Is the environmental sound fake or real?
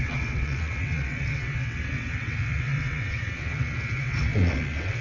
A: fake